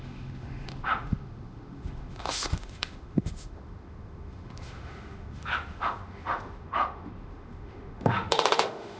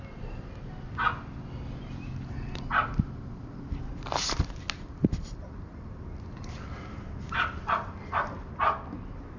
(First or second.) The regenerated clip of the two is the first